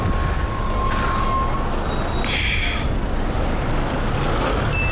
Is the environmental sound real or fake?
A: real